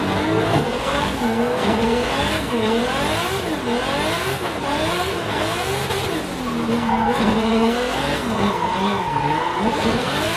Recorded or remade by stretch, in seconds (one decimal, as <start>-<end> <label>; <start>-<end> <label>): 0.0-2.8 remade; 2.8-4.2 recorded; 4.2-5.8 remade; 5.8-6.7 recorded; 6.7-10.4 remade